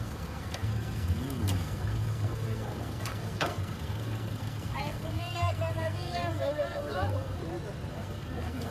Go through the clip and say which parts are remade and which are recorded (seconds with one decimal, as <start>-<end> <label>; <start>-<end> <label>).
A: 0.0-7.4 remade; 7.4-7.9 recorded; 7.9-8.7 remade